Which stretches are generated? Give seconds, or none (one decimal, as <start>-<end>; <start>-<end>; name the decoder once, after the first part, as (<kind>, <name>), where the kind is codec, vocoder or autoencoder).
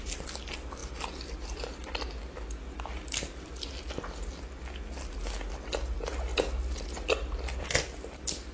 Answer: none